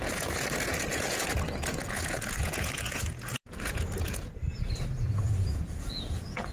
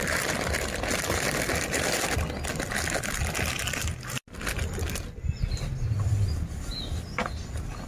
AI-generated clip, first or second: first